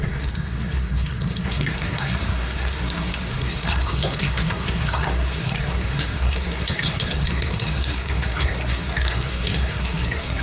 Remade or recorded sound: remade